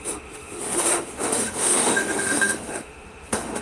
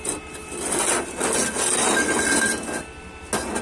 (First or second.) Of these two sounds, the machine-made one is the first